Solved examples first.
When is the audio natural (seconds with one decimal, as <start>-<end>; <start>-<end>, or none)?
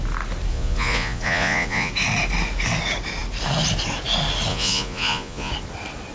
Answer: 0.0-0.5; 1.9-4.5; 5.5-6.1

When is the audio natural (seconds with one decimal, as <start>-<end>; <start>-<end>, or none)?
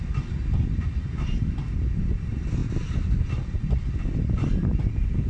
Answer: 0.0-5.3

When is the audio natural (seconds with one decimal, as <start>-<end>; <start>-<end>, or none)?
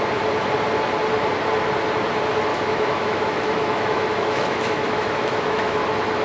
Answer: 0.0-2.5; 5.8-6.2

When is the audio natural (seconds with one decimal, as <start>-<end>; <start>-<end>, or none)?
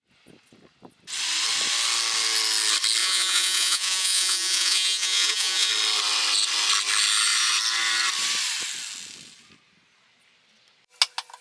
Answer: 0.0-3.0; 5.7-11.4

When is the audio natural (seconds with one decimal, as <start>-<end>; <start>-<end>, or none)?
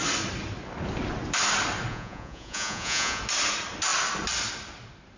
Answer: 0.0-1.9; 3.2-5.2